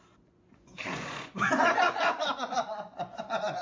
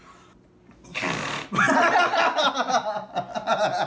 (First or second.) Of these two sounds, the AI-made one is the first